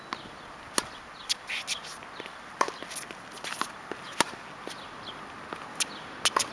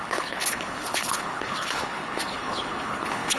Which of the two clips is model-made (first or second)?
second